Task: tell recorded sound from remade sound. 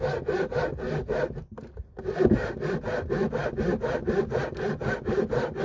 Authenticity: recorded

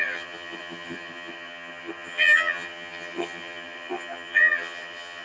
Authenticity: remade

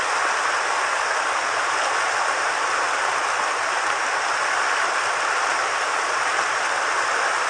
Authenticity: recorded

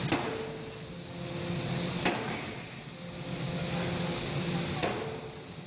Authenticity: recorded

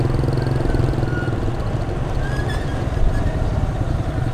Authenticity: recorded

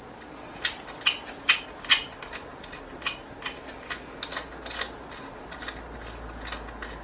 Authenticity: recorded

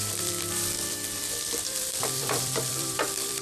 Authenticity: remade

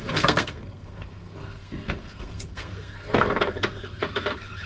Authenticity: remade